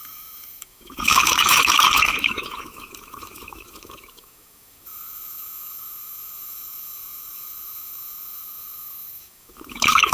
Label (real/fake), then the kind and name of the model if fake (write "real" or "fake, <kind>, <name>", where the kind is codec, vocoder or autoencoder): fake, autoencoder, DAC-VAE